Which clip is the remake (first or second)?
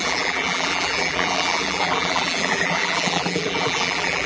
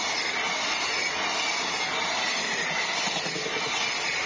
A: first